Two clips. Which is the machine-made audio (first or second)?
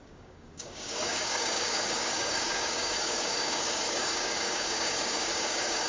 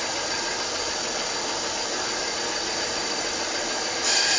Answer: first